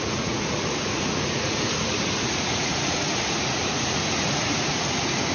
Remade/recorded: remade